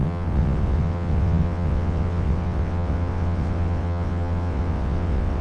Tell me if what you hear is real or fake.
fake